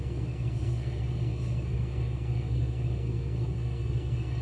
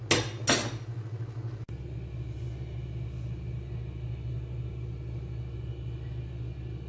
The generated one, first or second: first